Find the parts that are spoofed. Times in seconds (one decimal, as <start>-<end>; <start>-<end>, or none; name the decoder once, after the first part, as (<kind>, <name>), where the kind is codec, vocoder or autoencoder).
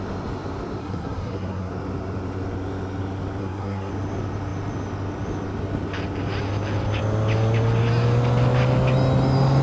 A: 0.8-1.7 (codec, SNAC); 3.4-3.9